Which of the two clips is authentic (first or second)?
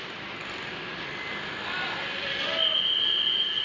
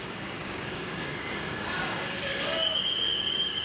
first